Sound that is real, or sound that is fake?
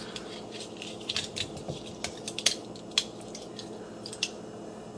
real